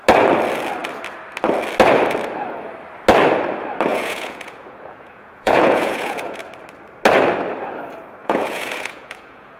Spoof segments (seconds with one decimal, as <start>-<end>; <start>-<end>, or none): 3.9-6.4; 8.2-9.6